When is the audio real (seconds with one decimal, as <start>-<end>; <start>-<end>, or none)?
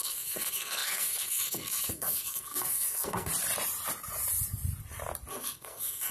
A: 3.3-5.3